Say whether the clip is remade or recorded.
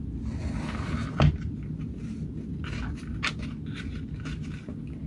recorded